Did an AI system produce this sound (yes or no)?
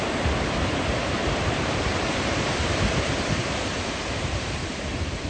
yes